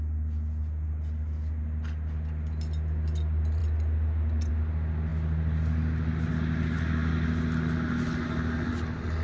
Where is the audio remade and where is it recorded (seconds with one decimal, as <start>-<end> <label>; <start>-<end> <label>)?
0.0-9.2 recorded